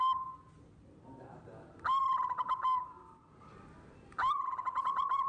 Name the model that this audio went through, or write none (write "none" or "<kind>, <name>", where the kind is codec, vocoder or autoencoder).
none